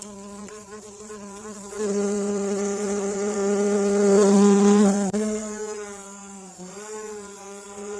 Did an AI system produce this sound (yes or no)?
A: yes